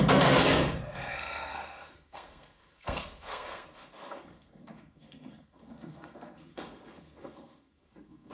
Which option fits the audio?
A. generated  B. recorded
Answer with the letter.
A